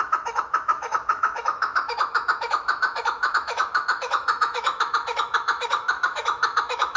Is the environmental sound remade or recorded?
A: remade